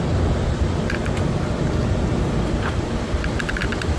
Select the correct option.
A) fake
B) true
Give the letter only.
B